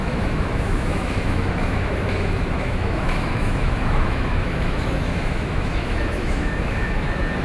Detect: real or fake fake